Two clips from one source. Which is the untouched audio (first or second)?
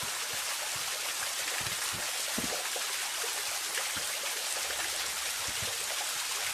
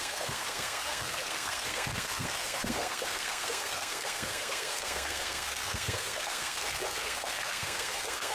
first